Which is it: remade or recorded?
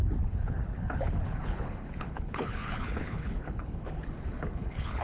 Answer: remade